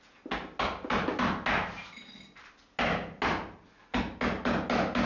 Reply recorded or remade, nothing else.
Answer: recorded